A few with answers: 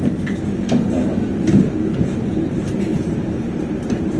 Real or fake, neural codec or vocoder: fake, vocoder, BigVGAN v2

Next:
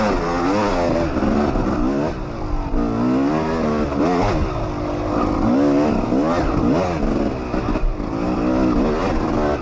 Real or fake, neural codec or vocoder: real